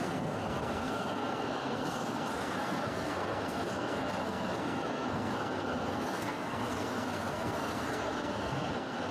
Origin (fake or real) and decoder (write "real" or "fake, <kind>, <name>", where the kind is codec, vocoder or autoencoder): fake, codec, SNAC